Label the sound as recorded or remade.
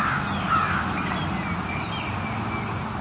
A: recorded